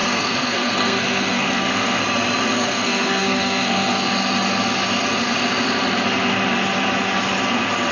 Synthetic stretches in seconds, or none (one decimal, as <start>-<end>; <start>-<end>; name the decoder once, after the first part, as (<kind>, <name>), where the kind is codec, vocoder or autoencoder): 0.0-2.0 (codec, SNAC); 2.5-4.1